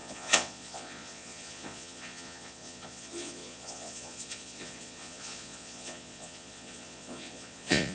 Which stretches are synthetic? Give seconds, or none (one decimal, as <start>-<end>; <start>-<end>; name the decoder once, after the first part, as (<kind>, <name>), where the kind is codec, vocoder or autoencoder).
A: 0.0-7.9 (vocoder, Vocos)